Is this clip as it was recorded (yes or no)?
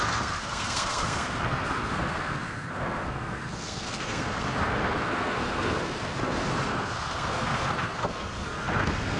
no